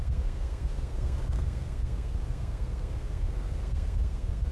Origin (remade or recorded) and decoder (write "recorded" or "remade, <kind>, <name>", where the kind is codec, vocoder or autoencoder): remade, codec, SNAC